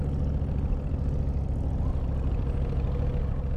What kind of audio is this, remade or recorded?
recorded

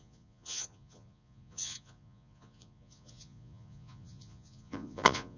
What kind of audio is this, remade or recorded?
remade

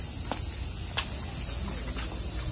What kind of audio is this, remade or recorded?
recorded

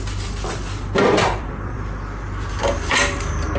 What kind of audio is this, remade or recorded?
remade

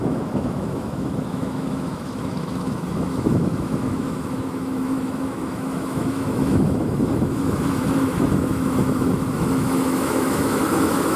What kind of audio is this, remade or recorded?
remade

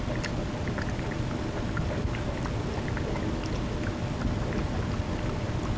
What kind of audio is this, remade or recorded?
recorded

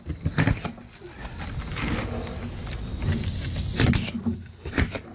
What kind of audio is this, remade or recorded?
recorded